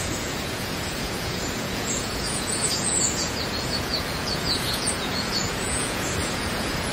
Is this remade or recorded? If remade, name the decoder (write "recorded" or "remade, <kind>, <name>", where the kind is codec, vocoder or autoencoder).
remade, vocoder, Vocos